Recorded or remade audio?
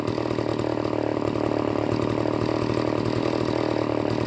recorded